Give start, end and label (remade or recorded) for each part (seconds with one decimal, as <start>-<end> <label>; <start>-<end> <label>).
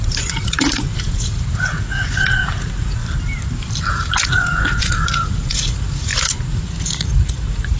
0.0-3.0 remade; 3.0-3.9 recorded; 3.9-7.8 remade